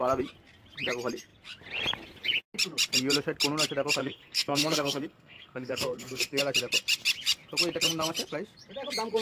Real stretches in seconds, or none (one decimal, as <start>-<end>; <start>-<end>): 0.0-4.0; 6.4-9.2